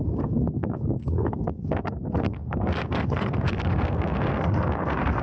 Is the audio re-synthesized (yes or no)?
yes